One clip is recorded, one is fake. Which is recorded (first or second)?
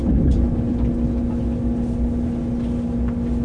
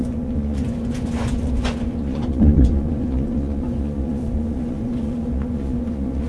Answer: first